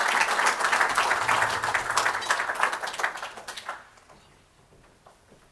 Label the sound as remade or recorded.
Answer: recorded